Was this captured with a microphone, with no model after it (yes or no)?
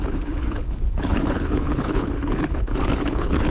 no